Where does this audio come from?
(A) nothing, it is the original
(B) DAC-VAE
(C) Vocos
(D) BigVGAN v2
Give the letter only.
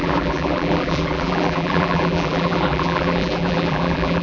D